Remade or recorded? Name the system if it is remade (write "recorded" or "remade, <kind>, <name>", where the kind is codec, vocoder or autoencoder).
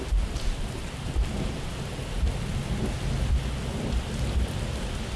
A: recorded